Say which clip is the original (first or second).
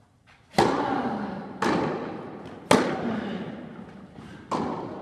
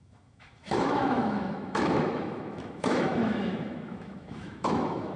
first